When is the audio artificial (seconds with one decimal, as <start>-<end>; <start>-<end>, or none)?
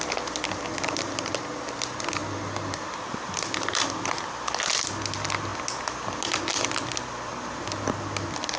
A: none